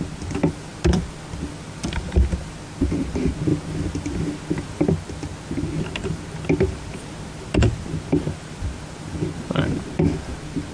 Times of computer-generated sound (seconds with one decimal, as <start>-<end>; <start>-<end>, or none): none